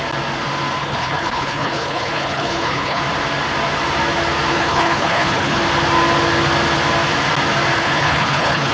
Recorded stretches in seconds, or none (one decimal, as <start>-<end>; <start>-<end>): 0.0-0.8; 3.0-4.5; 5.6-7.8